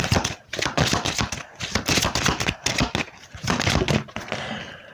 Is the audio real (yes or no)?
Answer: yes